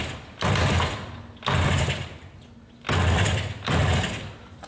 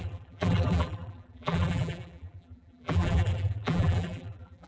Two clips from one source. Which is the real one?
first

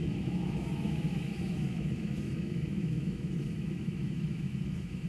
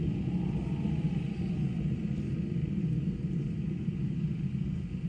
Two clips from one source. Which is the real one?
second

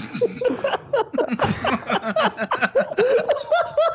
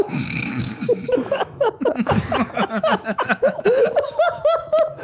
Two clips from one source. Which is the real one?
first